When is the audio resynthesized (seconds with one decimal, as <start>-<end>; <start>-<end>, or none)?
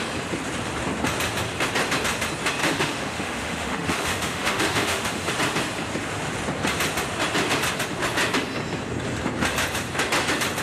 2.6-5.3